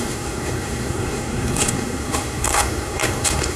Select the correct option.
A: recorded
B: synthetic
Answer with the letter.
B